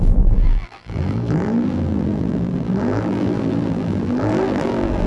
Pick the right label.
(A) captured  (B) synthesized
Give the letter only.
B